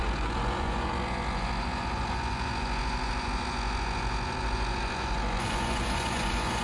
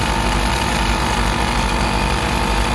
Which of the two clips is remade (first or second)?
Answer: first